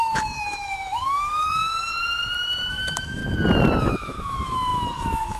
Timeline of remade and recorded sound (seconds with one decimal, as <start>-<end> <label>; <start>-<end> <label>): 0.0-1.9 remade; 1.9-2.7 recorded; 2.7-3.2 remade; 3.2-3.8 recorded; 3.8-5.4 remade